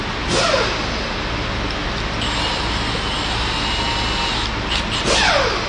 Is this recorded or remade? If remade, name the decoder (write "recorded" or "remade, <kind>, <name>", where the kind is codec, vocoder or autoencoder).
recorded